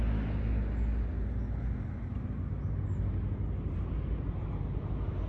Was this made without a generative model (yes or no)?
yes